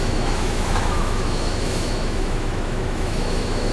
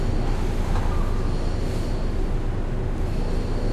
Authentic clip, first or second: second